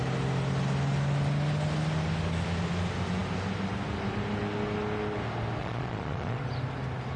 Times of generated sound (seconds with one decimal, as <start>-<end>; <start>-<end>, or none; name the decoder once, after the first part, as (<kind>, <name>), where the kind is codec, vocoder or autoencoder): 5.6-6.4 (vocoder, Vocos)